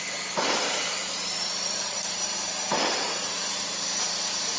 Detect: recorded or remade remade